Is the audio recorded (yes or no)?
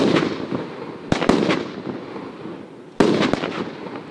yes